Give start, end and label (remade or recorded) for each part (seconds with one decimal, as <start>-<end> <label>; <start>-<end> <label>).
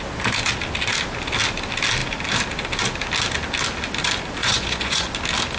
0.0-4.4 recorded; 4.4-5.1 remade; 5.1-5.6 recorded